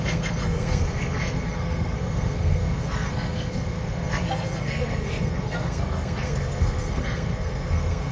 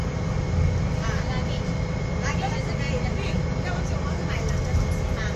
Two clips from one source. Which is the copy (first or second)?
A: first